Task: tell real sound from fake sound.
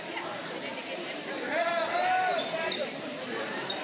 fake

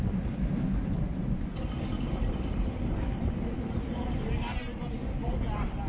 real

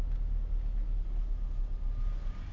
real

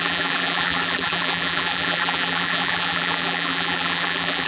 fake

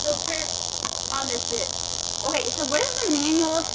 fake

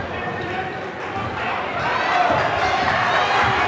real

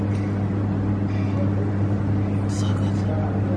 real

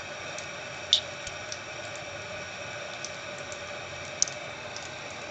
real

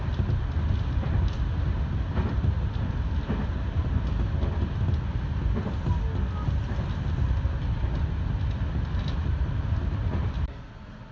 real